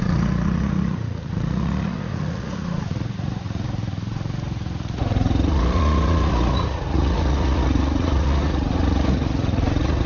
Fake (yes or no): yes